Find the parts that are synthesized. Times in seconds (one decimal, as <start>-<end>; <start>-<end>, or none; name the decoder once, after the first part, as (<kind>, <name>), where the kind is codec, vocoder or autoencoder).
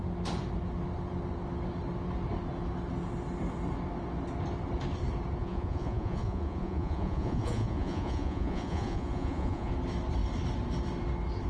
5.4-9.7 (vocoder, Vocos)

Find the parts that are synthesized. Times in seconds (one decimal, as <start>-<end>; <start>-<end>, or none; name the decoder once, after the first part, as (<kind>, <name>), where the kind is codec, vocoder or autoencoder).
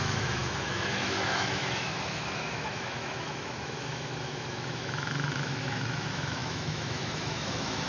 0.0-7.9 (autoencoder, DAC-VAE)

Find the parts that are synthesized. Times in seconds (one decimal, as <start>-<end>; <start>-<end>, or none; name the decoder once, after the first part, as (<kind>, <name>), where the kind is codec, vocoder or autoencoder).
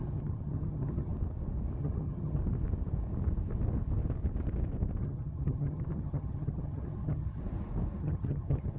0.0-1.1 (vocoder, HiFi-GAN); 1.8-2.4; 5.0-7.4; 8.0-8.8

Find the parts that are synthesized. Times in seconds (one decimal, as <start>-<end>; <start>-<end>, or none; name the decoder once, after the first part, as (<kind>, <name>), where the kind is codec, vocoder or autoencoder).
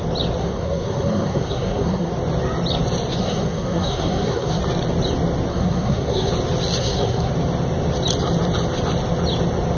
0.4-2.1 (codec, SNAC); 3.2-4.6; 5.5-6.3; 6.8-7.3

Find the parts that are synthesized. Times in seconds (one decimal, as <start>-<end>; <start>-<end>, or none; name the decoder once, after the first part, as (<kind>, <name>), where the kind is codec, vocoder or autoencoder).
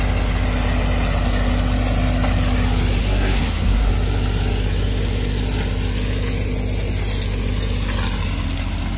3.0-3.9 (codec, SNAC)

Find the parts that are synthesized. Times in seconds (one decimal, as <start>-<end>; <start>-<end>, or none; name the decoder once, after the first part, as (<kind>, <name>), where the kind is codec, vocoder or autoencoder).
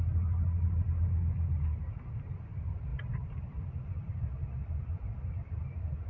none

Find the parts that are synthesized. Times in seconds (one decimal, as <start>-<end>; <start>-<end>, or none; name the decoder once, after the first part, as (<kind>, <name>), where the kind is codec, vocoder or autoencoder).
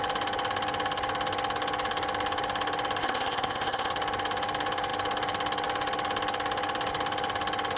3.0-3.9 (codec, ZipCodec)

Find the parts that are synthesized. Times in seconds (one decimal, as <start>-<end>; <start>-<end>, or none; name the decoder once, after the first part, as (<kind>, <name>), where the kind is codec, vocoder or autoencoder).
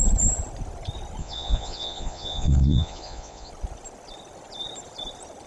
1.2-3.5 (vocoder, Vocos)